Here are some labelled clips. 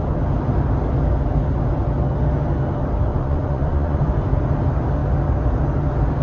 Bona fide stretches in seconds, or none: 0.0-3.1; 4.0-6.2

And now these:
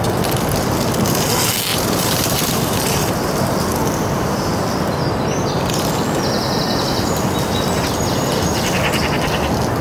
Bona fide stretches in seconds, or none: 0.0-1.7; 3.3-3.7; 4.5-9.8

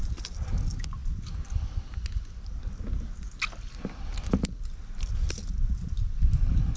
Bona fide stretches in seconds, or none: 0.0-6.8

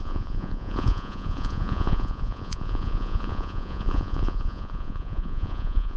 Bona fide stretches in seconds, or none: none

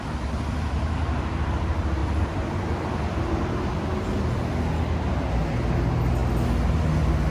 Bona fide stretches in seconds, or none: 0.0-7.3

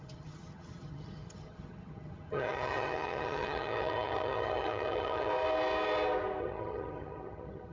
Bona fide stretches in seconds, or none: 5.3-6.4

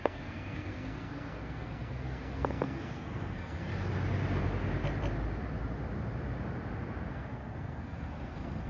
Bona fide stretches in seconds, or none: 3.7-7.1